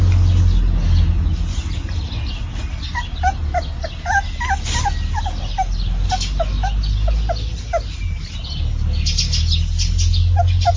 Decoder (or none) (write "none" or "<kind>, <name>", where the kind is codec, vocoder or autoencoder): none